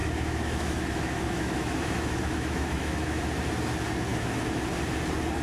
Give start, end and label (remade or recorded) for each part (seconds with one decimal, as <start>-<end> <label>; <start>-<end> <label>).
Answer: 0.0-3.2 remade; 3.2-4.1 recorded; 4.1-4.7 remade; 4.7-5.4 recorded